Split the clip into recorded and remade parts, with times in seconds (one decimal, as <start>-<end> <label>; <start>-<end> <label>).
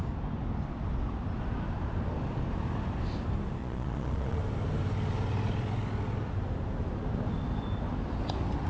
0.0-3.6 recorded; 3.6-4.4 remade; 4.4-8.7 recorded